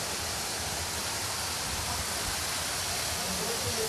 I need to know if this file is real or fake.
real